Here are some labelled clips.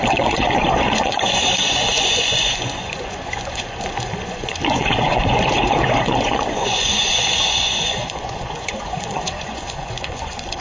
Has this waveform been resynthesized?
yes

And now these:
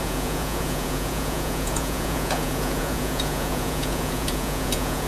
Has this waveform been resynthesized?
yes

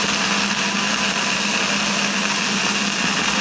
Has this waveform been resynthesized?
no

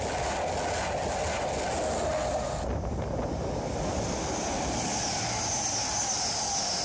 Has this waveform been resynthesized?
no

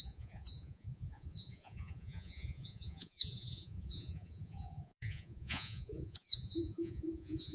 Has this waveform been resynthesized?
yes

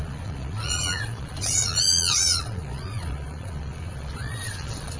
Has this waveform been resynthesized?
yes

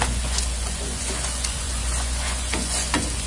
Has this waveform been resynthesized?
yes